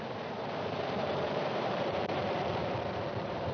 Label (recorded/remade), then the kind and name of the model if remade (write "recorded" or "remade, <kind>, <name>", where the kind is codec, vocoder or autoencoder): remade, vocoder, BigVGAN v2